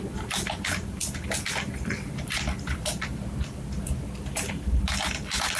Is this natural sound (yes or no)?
no